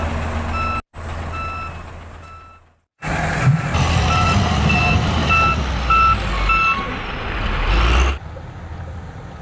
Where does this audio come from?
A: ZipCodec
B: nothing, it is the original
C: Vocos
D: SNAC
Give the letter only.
B